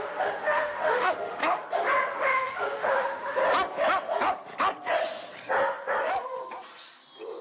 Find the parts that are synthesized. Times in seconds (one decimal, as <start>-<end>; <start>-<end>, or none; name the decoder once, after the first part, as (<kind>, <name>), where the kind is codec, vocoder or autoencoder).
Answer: 0.0-1.4 (autoencoder, DAC-VAE); 2.2-3.4